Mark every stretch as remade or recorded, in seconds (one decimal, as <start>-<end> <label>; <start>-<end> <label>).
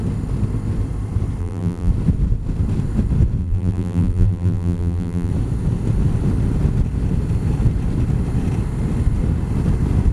0.0-1.4 recorded; 1.4-1.9 remade; 1.9-3.4 recorded; 3.4-5.3 remade; 5.3-10.1 recorded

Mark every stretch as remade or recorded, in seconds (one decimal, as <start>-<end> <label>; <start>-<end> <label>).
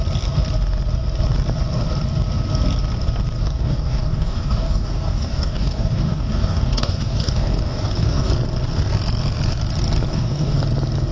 0.0-3.4 recorded; 3.4-8.3 remade; 8.3-10.1 recorded; 10.1-10.6 remade; 10.6-11.1 recorded